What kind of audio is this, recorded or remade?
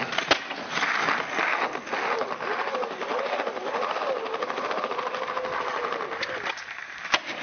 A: recorded